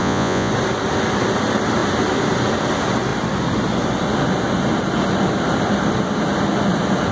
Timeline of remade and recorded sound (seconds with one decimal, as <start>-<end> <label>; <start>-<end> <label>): 0.0-0.5 remade; 0.5-7.1 recorded